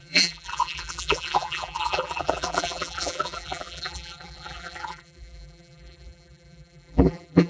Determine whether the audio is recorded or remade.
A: remade